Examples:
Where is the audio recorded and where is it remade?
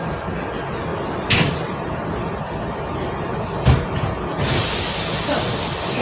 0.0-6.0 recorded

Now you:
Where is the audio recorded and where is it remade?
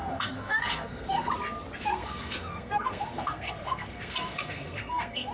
0.0-1.3 remade; 1.3-1.9 recorded; 1.9-5.3 remade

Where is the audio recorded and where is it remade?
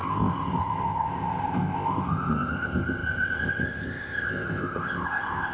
0.0-5.5 remade